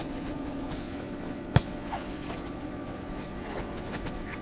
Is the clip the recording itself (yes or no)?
no